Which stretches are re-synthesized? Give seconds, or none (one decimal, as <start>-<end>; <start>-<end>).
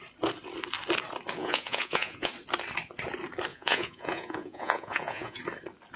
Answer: 1.4-2.3; 3.5-5.4